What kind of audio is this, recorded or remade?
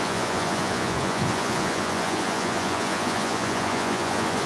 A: remade